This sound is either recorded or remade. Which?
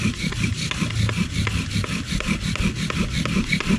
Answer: recorded